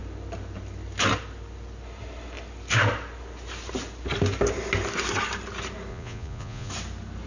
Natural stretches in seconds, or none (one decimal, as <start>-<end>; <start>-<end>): 0.0-5.9; 6.7-7.3